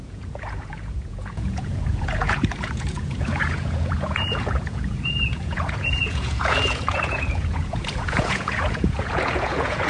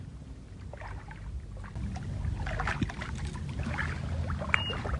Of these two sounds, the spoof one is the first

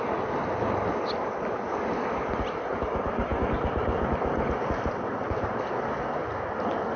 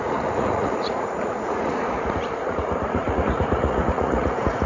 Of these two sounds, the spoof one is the second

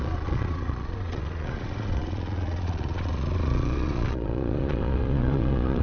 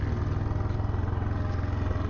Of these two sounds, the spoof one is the first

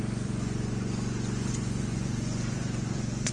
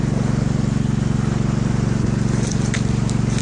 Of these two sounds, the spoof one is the first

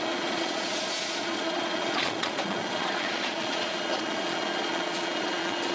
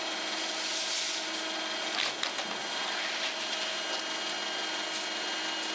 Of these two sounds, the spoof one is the first